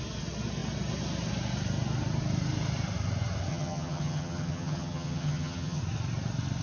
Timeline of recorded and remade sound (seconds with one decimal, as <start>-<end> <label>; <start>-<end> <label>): 0.0-3.5 recorded; 3.5-5.8 remade; 5.8-6.6 recorded